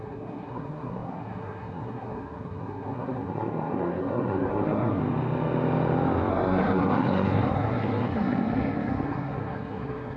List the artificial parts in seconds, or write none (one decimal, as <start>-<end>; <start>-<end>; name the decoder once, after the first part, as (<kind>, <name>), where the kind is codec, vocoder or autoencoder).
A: 0.0-5.0 (codec, SNAC); 6.3-10.2